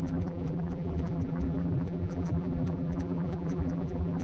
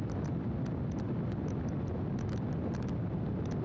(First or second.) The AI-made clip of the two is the first